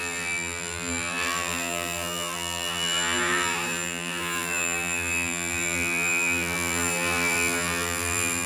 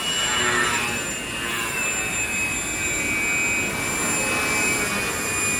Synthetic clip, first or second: first